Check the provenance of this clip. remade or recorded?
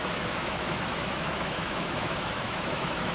remade